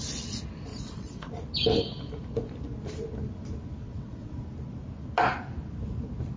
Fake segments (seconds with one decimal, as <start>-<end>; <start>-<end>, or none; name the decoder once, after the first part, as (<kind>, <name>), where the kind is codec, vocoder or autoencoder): 0.7-1.3 (vocoder, WaveNeXt); 3.8-4.3